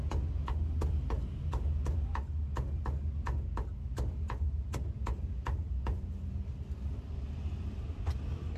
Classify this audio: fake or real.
real